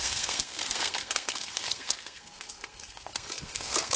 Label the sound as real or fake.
fake